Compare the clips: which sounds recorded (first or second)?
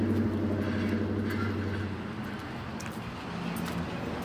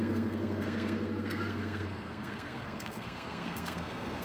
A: first